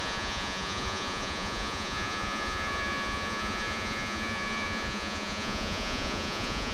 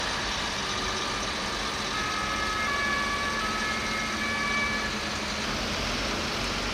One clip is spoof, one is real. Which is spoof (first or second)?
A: first